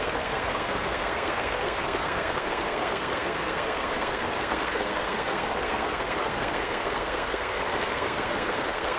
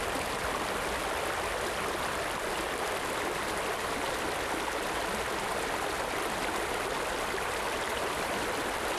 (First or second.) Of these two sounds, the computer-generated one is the first